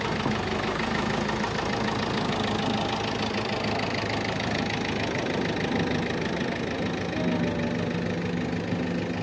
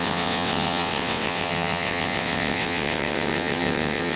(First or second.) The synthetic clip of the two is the second